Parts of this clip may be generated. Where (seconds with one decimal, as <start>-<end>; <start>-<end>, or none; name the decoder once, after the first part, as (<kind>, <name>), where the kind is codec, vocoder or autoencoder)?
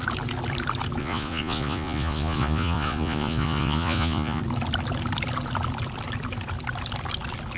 1.0-4.4 (vocoder, Vocos)